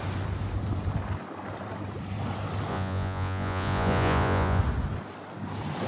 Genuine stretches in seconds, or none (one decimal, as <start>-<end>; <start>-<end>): 0.0-2.7; 4.6-5.9